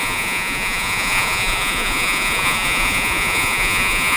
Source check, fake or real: fake